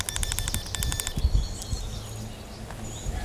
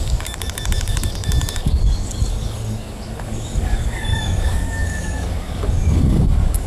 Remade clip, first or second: second